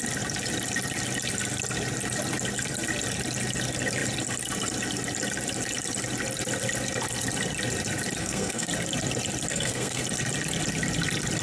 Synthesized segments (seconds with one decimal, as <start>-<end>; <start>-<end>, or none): 8.2-8.7; 9.5-10.0